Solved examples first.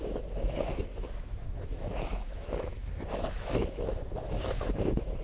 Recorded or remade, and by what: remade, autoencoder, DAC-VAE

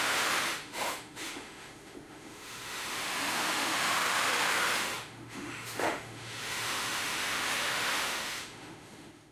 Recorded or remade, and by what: remade, autoencoder, DAC-VAE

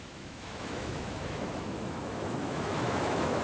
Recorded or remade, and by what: remade, autoencoder, DAC-VAE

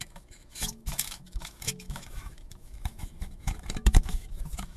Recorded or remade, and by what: remade, autoencoder, DAC-VAE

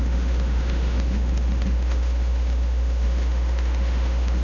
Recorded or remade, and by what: remade, autoencoder, DAC-VAE